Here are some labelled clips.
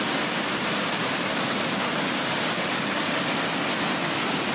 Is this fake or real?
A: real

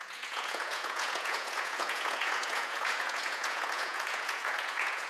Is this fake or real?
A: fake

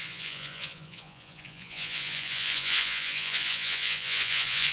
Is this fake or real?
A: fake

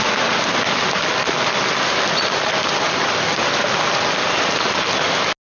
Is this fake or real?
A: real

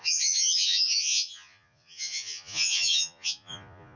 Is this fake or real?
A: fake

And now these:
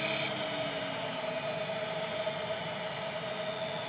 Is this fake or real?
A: real